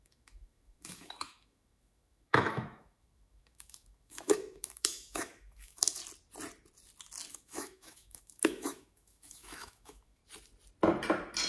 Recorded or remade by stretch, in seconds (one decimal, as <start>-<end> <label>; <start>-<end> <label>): 0.0-6.0 remade; 6.0-7.3 recorded; 7.3-10.2 remade; 10.2-11.5 recorded